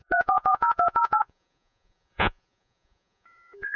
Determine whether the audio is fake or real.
fake